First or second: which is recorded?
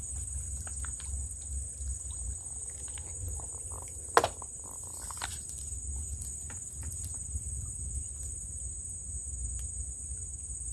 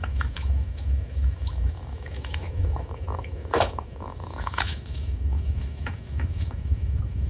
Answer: first